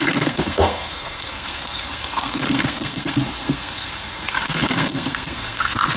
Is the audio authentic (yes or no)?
no